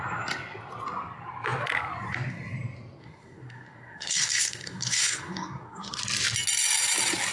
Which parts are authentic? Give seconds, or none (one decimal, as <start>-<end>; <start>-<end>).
0.0-3.0; 6.0-7.3